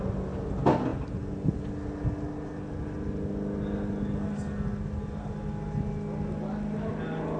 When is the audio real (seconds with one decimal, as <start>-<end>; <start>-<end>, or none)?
0.0-7.4